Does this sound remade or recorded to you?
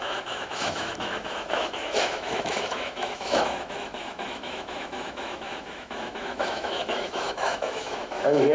remade